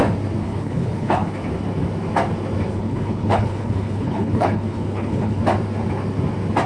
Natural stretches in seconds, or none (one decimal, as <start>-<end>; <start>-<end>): 0.0-0.4; 1.3-2.7; 5.4-6.7